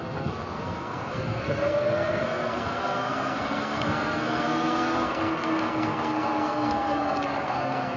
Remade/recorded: remade